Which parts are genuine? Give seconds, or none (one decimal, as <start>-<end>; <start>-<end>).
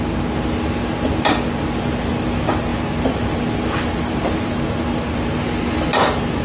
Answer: 0.0-6.4